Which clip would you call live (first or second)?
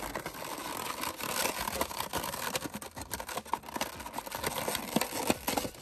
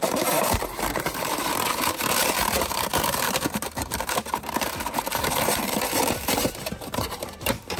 first